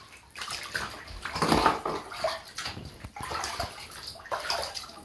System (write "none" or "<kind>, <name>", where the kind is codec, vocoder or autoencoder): none